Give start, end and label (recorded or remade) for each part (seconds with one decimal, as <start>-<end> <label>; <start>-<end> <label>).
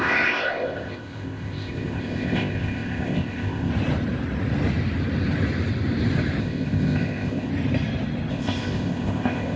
0.0-3.7 remade; 3.7-6.4 recorded; 6.4-7.5 remade; 7.5-8.3 recorded; 8.3-9.6 remade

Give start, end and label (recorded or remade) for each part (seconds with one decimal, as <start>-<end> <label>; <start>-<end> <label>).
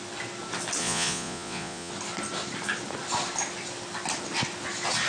0.0-0.8 recorded; 0.8-1.9 remade; 1.9-5.1 recorded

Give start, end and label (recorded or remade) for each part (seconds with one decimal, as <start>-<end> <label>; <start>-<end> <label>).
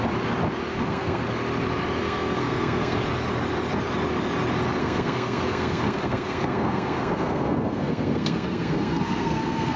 0.0-0.7 recorded; 0.7-1.3 remade; 1.3-2.0 recorded; 2.0-3.0 remade; 3.0-4.8 recorded; 4.8-9.8 remade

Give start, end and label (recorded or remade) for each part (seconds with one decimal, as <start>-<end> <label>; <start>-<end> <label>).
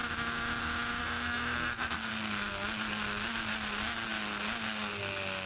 0.0-1.0 recorded; 1.0-2.1 remade; 2.1-5.5 recorded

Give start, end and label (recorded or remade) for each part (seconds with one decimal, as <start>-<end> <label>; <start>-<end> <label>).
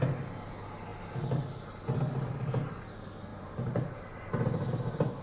0.0-3.3 recorded; 3.3-4.2 remade; 4.2-5.2 recorded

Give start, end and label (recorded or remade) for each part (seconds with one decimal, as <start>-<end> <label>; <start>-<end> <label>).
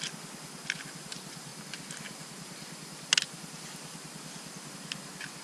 0.0-5.4 recorded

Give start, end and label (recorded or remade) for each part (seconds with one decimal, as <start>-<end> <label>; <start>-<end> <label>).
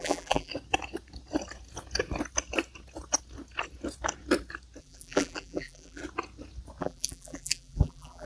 0.0-0.5 remade; 0.5-4.8 recorded; 4.8-6.0 remade; 6.0-6.8 recorded; 6.8-8.3 remade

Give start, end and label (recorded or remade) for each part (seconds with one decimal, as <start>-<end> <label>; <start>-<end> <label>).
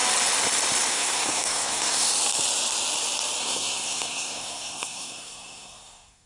0.0-0.9 recorded; 0.9-2.1 remade; 2.1-3.4 recorded; 3.4-6.3 remade